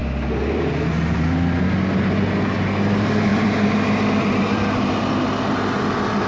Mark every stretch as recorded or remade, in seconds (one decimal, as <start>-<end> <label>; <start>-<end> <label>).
0.0-3.3 recorded; 3.3-5.0 remade; 5.0-6.3 recorded